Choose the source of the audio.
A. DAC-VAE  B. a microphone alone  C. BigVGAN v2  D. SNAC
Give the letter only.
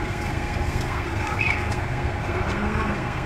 D